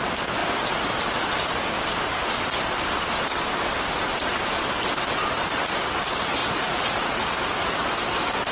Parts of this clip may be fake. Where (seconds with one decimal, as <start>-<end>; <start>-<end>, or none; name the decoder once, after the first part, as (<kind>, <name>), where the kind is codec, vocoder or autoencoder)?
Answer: 6.4-7.3 (vocoder, Vocos)